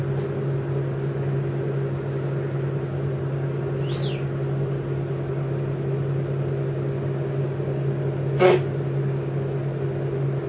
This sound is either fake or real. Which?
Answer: real